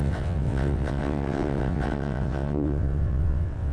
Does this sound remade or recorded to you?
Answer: remade